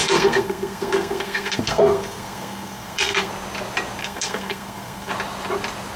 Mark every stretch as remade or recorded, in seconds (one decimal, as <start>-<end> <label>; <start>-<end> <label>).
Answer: 0.0-3.3 remade; 3.3-4.0 recorded; 4.0-5.1 remade; 5.1-6.0 recorded